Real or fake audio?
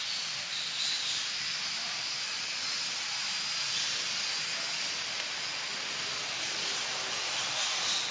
real